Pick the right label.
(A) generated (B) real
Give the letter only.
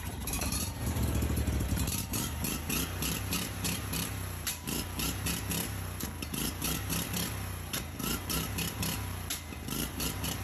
A